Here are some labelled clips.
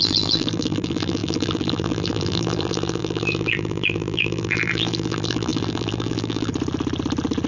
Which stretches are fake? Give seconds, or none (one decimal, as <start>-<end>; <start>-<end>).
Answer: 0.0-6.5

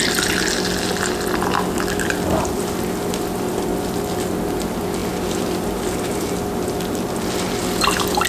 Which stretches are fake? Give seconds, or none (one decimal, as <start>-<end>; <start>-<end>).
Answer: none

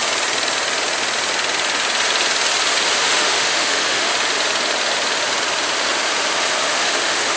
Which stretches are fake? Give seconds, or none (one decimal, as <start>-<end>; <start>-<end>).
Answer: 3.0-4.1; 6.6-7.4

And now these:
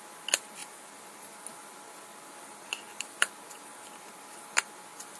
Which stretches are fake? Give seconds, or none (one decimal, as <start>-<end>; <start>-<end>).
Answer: none

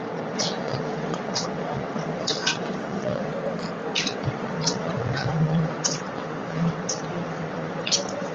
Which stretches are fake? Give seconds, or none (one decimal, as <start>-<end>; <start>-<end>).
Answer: 0.0-3.3; 4.0-8.3

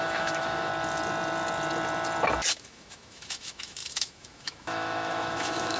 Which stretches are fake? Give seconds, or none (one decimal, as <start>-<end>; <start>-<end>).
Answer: 0.0-0.7; 2.5-5.8